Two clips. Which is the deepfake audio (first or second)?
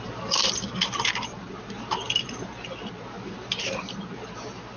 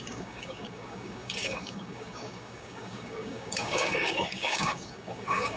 second